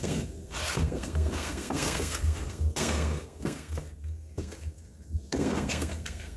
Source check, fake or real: fake